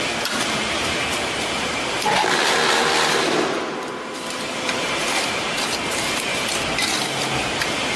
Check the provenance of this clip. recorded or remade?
recorded